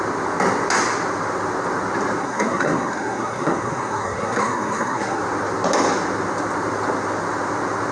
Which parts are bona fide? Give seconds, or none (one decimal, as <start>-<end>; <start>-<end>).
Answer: 0.0-2.2; 5.2-7.9